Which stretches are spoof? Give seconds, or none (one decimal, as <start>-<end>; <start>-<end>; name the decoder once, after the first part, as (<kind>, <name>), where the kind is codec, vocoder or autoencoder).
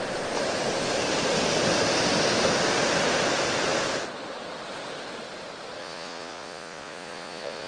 5.8-7.7 (vocoder, Vocos)